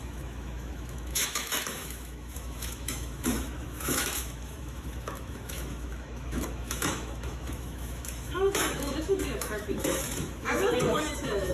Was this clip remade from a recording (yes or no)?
yes